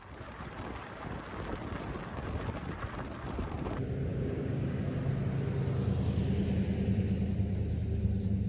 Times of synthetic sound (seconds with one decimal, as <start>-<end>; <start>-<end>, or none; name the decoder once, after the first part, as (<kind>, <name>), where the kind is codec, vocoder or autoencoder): 4.1-4.8 (codec, DAC)